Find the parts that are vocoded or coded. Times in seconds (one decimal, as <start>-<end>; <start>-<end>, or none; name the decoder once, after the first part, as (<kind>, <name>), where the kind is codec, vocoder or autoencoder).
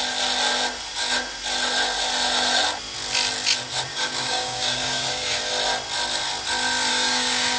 3.9-5.4 (codec, DAC); 6.9-7.6